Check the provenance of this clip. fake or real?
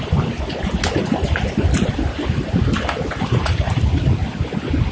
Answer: real